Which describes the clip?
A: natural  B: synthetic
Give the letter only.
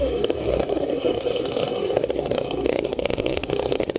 B